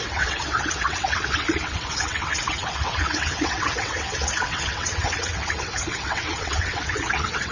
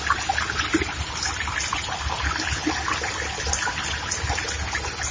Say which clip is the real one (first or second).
second